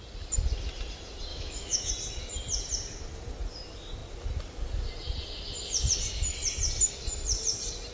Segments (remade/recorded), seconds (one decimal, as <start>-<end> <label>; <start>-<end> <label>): 0.0-1.3 recorded; 1.3-1.9 remade; 1.9-7.9 recorded